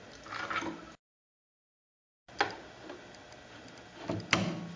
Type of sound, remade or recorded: recorded